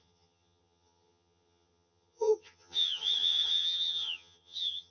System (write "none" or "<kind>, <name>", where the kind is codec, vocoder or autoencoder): vocoder, HiFi-GAN